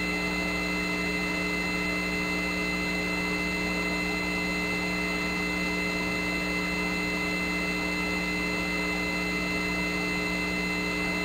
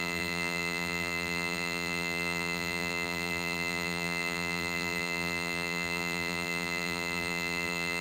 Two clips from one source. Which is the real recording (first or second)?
first